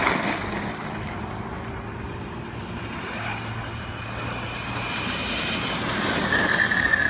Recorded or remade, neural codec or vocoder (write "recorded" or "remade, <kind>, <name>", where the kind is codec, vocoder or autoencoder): recorded